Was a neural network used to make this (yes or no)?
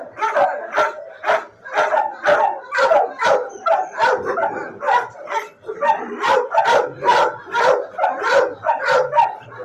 yes